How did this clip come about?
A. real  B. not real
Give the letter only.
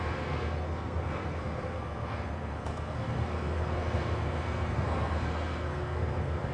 B